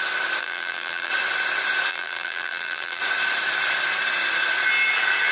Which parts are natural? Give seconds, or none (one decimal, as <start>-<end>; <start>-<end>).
0.0-0.4; 1.1-1.9; 3.0-5.3